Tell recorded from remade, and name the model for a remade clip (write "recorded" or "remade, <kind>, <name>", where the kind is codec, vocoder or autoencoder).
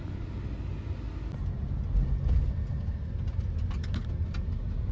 recorded